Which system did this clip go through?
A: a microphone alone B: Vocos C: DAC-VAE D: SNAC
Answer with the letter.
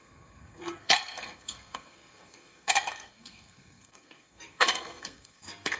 D